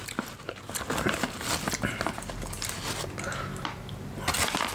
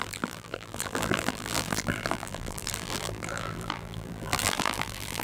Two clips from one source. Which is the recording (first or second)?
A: first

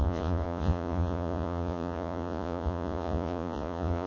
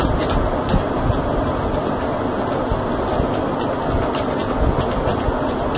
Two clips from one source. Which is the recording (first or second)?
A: second